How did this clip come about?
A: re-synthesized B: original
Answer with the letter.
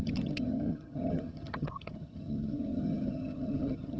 A